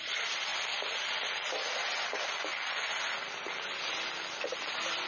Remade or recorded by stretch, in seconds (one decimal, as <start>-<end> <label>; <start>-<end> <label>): 0.0-5.1 recorded